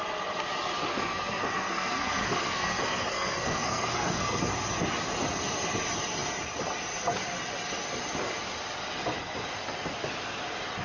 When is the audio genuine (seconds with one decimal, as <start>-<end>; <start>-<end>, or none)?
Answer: 0.0-0.9; 4.4-10.8